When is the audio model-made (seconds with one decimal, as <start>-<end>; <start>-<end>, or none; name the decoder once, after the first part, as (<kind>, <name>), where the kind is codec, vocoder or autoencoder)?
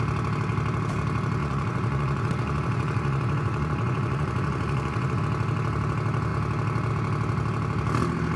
1.4-5.2 (vocoder, Vocos)